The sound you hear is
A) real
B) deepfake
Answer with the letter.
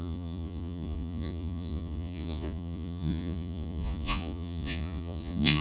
B